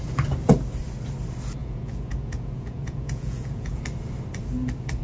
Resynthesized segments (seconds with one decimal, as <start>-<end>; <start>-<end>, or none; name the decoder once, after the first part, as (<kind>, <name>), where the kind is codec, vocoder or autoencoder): 1.6-3.8 (vocoder, Vocos)